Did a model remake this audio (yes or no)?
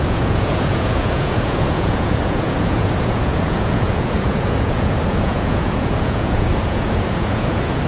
yes